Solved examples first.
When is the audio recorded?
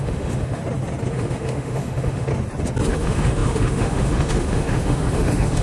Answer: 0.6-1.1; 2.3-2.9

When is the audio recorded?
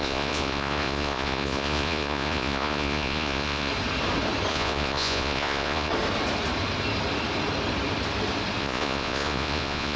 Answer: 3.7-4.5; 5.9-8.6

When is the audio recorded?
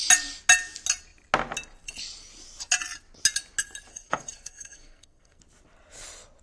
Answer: 0.0-3.9; 5.4-6.4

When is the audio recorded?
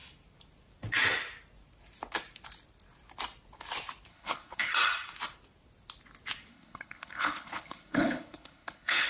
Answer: 0.0-4.1; 4.7-6.5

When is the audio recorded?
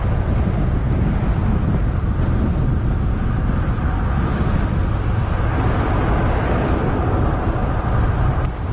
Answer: 0.0-8.7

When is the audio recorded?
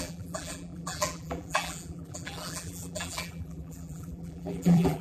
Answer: none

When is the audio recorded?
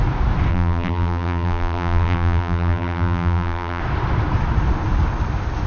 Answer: 0.0-0.5; 3.8-5.7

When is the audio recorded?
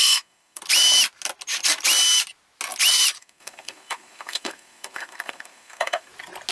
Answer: 0.6-3.2; 6.1-6.5